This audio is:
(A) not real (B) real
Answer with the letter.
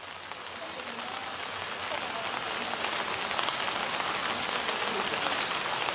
B